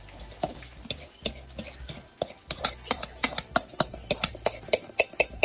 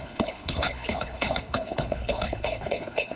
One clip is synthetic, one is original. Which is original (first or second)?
first